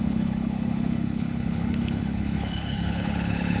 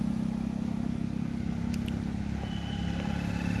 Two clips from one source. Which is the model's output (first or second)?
first